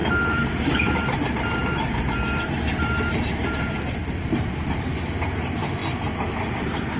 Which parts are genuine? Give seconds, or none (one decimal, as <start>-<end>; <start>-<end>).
5.8-6.6